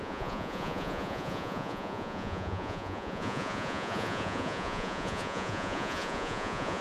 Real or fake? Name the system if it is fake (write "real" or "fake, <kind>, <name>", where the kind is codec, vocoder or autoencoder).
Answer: fake, vocoder, Vocos